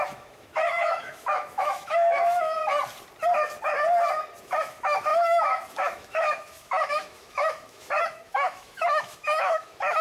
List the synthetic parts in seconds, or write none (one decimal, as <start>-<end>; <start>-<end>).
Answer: 0.0-2.6; 4.4-10.0